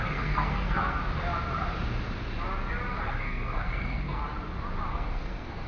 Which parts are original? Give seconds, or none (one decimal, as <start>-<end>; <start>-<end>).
1.0-3.0; 4.2-4.9